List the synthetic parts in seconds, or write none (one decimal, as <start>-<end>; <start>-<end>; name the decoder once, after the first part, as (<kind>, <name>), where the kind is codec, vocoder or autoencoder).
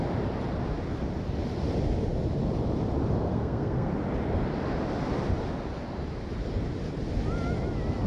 3.3-3.9 (codec, SNAC)